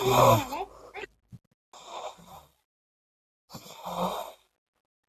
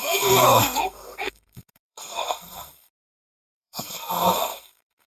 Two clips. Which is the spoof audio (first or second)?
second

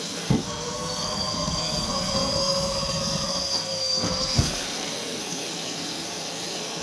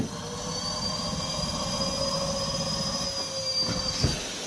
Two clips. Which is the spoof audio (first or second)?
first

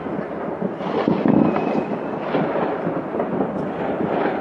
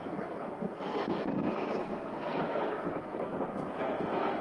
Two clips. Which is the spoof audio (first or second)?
second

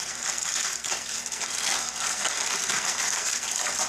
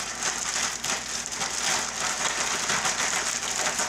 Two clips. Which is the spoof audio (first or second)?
first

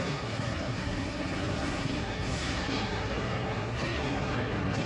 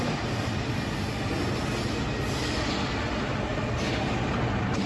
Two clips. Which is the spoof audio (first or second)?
first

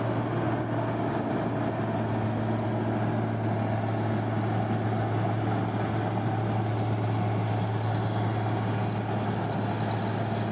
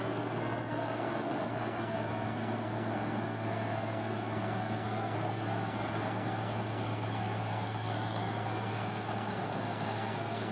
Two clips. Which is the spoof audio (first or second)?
second